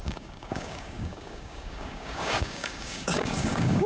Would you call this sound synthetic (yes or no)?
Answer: yes